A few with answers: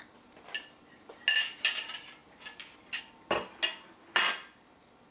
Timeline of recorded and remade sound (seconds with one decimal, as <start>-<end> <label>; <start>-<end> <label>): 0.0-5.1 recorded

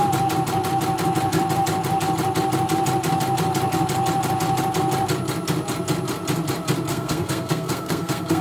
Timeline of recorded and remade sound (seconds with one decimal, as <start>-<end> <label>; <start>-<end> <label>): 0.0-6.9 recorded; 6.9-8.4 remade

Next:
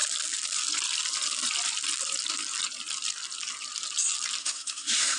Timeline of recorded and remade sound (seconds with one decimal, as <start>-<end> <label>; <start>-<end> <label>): 0.0-4.4 recorded; 4.4-5.2 remade

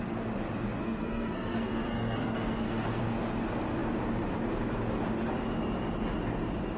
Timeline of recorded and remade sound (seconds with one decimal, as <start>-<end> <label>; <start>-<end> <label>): 0.0-0.8 recorded; 0.8-3.0 remade; 3.0-6.8 recorded

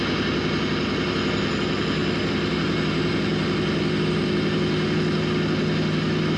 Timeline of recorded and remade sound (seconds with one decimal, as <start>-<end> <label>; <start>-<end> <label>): 0.0-6.4 recorded

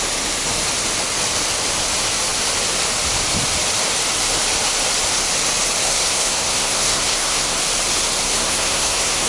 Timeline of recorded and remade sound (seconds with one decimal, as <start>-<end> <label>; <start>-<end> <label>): 0.0-5.8 recorded; 5.8-7.6 remade; 7.6-8.2 recorded; 8.2-9.3 remade

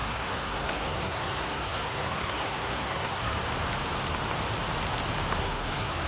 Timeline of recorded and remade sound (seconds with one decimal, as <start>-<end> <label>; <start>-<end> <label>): 0.0-3.3 remade; 3.3-5.4 recorded; 5.4-6.1 remade

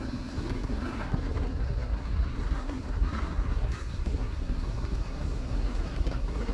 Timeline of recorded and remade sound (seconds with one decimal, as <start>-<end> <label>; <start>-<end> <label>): 0.0-6.5 remade